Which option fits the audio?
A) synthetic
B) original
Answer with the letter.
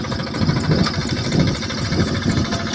B